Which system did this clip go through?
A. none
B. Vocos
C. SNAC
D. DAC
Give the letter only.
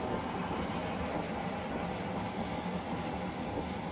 A